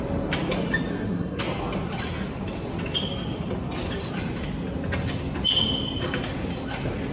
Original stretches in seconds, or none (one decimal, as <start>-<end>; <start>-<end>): 0.0-0.9; 1.4-7.1